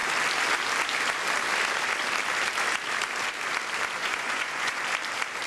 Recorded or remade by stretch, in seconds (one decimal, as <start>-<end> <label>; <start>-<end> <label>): 0.0-4.0 recorded; 4.0-4.8 remade; 4.8-5.5 recorded